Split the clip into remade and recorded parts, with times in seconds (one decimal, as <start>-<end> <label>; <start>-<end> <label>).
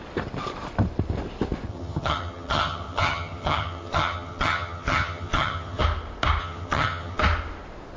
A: 0.0-1.7 recorded; 1.7-5.8 remade; 5.8-6.4 recorded; 6.4-7.2 remade; 7.2-8.0 recorded